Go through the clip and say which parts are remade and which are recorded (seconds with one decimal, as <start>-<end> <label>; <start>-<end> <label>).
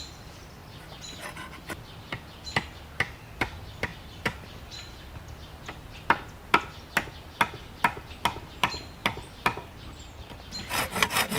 0.0-11.4 recorded